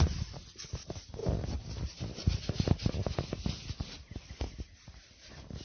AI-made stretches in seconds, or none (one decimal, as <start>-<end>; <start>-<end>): none